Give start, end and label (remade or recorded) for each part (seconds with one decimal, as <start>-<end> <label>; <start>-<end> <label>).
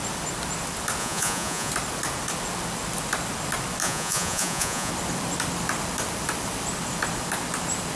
0.0-1.0 recorded; 1.0-1.7 remade; 1.7-3.8 recorded; 3.8-4.9 remade; 4.9-8.0 recorded